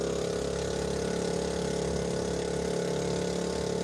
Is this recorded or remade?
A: recorded